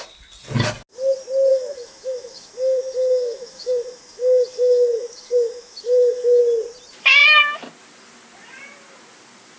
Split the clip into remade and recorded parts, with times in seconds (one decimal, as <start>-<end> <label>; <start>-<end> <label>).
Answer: 0.0-1.5 recorded; 1.5-6.4 remade; 6.4-9.6 recorded